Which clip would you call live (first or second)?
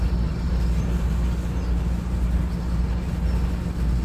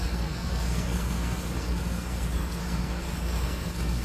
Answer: first